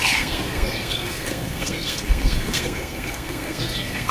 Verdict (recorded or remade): remade